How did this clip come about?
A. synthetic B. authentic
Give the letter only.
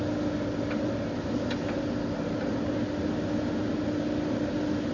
B